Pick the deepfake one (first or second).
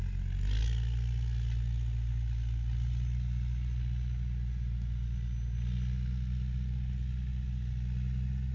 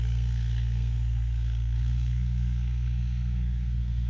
second